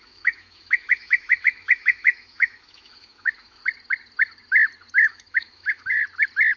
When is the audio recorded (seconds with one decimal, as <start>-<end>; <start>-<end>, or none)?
3.6-5.0; 6.0-6.6